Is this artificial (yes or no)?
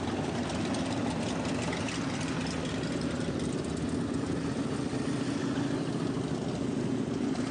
no